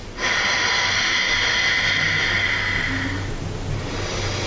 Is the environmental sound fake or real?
real